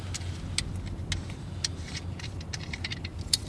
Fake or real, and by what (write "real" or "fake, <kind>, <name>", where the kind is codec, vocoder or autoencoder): real